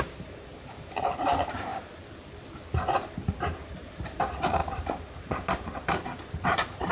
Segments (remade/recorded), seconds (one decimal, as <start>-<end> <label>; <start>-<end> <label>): 0.0-1.7 remade; 1.7-3.3 recorded; 3.3-6.9 remade